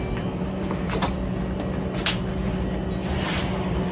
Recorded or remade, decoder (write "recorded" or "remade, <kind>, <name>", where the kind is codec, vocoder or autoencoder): recorded